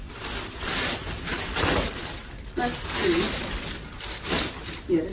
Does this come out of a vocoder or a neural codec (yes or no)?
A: no